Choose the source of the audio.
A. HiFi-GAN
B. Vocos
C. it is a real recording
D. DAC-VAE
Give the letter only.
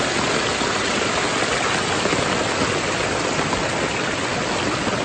C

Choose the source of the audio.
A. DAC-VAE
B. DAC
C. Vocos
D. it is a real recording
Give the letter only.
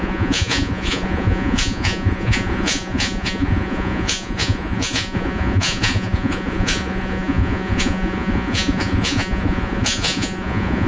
C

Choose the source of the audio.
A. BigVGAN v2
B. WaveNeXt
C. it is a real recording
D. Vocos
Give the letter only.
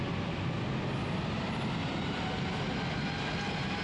C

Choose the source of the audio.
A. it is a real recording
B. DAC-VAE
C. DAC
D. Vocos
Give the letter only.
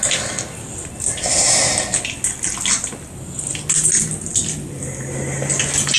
A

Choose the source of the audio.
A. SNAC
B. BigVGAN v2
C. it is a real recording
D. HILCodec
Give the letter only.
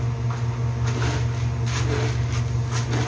C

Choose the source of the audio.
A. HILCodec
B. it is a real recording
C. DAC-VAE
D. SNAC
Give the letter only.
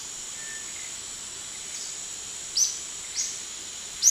B